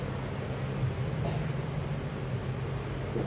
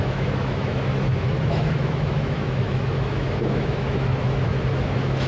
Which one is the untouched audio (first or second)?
first